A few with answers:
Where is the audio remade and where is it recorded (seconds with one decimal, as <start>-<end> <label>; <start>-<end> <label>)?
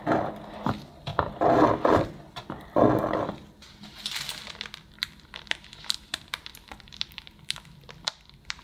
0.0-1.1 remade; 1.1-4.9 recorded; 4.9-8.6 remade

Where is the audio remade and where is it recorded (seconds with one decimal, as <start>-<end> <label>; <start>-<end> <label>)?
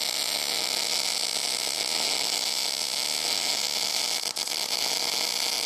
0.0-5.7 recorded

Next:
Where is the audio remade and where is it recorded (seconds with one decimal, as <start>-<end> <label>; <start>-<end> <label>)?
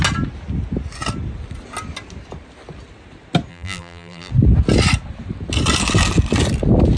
0.0-3.5 recorded; 3.5-4.3 remade; 4.3-7.0 recorded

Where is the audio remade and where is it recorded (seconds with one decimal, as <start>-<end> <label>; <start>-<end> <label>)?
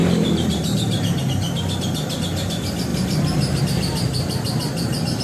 0.0-1.2 remade; 1.2-2.9 recorded; 2.9-3.6 remade; 3.6-5.2 recorded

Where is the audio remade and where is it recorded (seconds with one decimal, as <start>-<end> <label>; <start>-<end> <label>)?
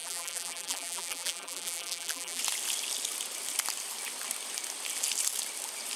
0.0-2.4 remade; 2.4-6.0 recorded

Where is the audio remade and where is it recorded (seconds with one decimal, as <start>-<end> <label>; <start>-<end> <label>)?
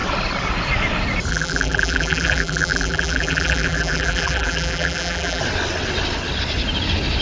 0.0-1.3 recorded; 1.3-5.4 remade; 5.4-7.2 recorded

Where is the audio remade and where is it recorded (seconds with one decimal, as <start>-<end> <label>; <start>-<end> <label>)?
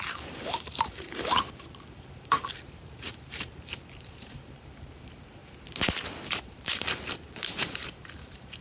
0.0-5.4 remade; 5.4-6.4 recorded; 6.4-8.6 remade